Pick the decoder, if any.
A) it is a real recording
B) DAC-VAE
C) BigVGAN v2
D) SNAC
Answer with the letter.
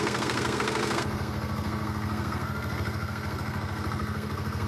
D